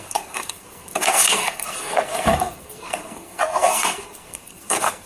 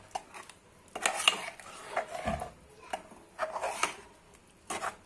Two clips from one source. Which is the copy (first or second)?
first